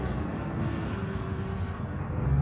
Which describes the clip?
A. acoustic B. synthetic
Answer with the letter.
B